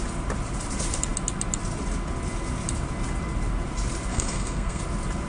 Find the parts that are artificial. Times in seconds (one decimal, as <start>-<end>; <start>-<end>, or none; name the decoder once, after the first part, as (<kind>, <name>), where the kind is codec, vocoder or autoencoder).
4.1-4.8 (codec, SNAC)